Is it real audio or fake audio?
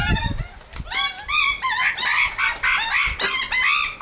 real